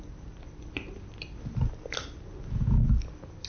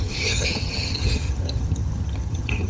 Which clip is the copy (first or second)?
second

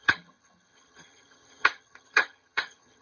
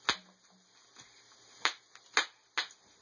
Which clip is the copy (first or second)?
first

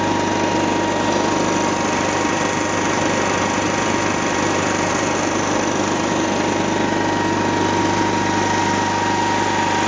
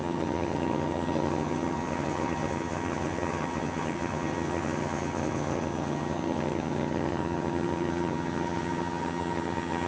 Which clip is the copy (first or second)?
second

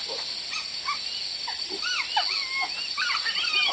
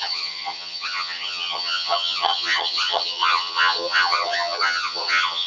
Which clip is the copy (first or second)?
second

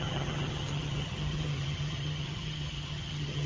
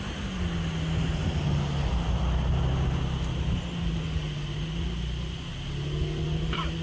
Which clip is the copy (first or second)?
first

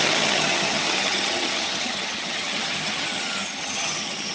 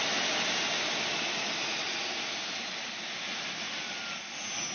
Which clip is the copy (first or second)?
first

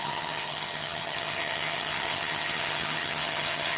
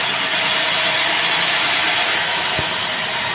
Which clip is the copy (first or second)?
first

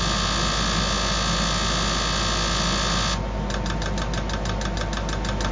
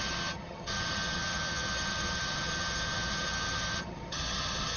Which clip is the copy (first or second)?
second